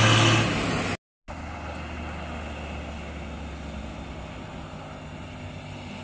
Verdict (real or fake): real